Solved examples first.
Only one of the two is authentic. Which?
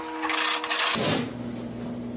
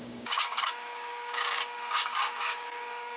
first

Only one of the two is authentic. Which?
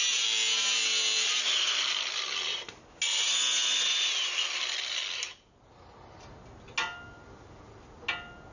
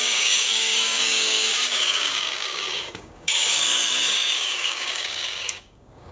first